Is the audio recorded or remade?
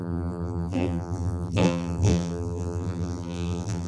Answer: remade